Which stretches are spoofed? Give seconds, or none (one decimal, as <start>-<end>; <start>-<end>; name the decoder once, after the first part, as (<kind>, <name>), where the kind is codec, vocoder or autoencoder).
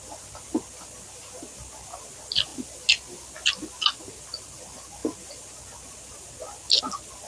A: none